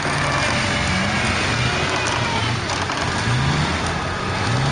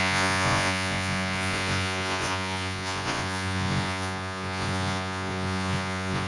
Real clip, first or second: first